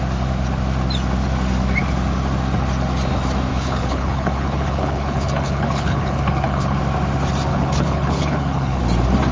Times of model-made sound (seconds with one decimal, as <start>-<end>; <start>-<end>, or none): 3.5-6.8; 7.5-8.8